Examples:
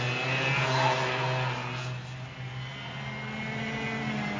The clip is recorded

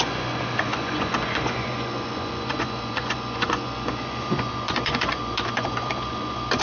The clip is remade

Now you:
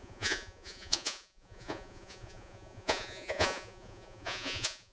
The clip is remade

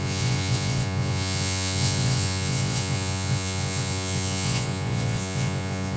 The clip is remade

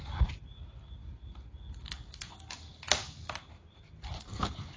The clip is recorded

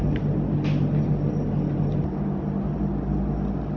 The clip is recorded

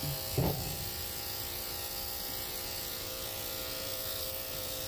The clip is remade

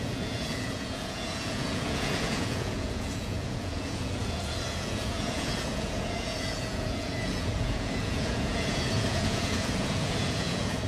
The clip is remade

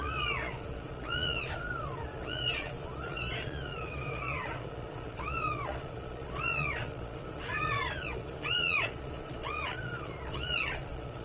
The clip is remade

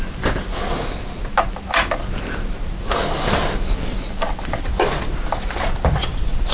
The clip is recorded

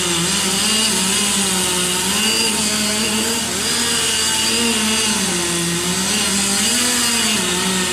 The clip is recorded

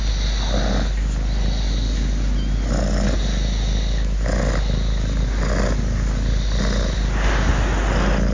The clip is recorded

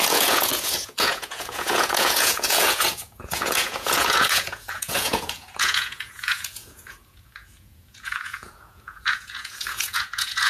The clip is remade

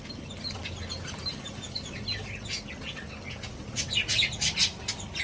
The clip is recorded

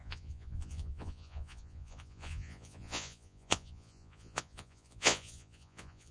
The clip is remade